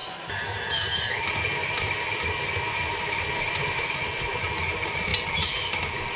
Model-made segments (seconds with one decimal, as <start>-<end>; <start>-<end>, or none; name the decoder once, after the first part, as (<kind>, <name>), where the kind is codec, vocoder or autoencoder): 1.6-4.5 (vocoder, BigVGAN v2)